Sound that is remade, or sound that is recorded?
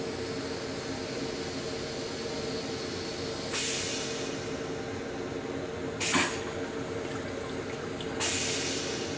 recorded